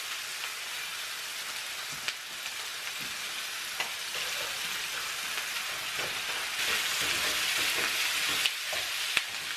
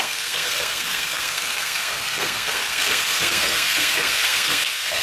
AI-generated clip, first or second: second